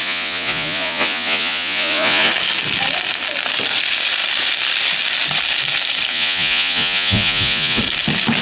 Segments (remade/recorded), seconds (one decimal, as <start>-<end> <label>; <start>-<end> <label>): 0.0-2.3 remade; 2.3-6.1 recorded; 6.1-7.8 remade; 7.8-8.4 recorded